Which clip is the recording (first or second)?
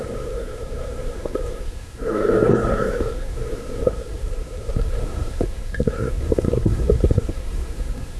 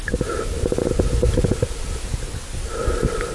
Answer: second